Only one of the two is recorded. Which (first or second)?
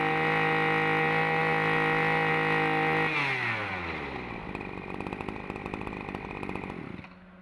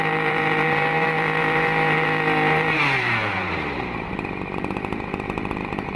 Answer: first